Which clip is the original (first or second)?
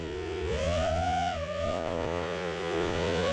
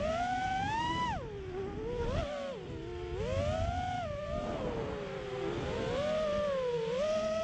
second